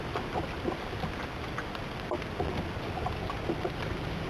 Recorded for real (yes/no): yes